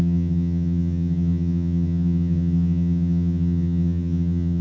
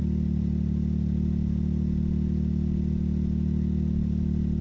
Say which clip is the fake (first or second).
first